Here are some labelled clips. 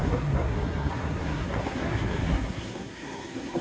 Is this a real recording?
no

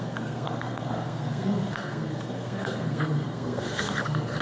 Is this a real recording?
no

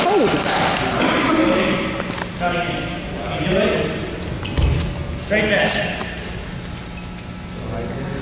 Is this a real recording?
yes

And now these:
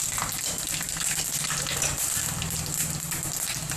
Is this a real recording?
yes